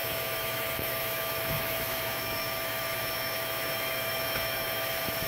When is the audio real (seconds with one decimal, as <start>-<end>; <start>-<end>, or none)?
none